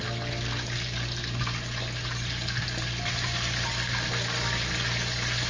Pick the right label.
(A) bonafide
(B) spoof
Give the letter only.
A